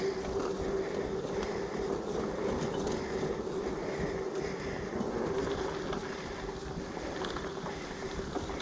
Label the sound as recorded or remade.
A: recorded